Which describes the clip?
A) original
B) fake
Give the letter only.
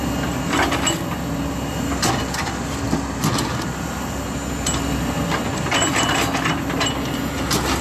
A